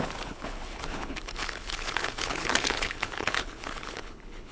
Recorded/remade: remade